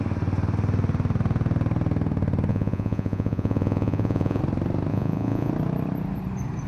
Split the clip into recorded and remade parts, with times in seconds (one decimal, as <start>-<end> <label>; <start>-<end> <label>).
0.0-2.5 recorded; 2.5-4.4 remade; 4.4-4.9 recorded; 4.9-5.5 remade; 5.5-6.7 recorded